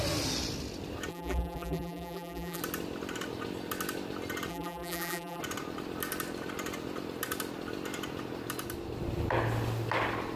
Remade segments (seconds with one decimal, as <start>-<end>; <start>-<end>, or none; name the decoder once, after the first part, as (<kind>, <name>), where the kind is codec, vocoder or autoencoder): 1.1-2.6 (vocoder, BigVGAN v2); 4.5-5.4